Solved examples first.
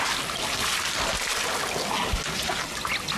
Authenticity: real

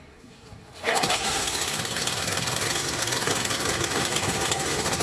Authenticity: fake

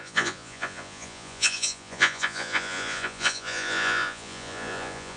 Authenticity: fake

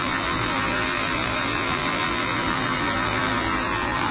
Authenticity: fake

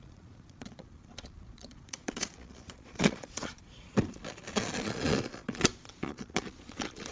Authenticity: fake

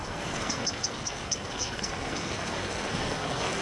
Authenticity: fake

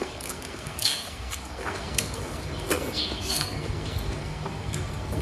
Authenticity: fake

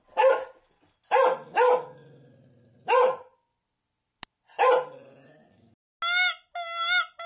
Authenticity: real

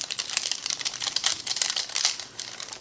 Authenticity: fake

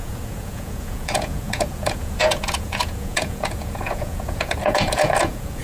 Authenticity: fake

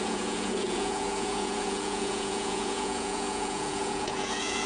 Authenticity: fake